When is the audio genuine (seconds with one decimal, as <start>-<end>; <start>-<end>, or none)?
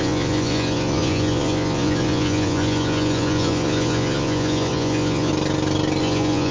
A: 5.3-6.0